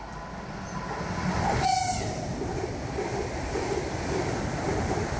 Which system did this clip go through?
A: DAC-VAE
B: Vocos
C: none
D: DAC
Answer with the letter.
C